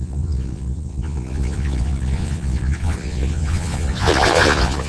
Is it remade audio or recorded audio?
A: remade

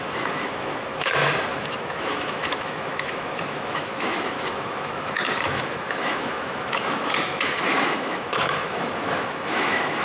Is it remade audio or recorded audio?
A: remade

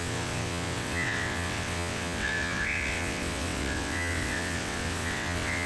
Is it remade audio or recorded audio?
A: remade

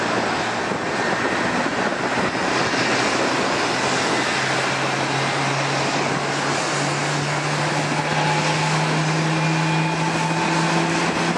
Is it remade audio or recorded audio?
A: recorded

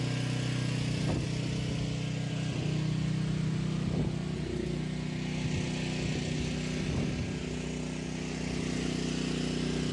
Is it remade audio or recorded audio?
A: recorded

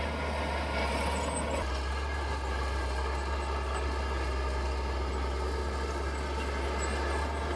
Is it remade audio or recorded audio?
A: recorded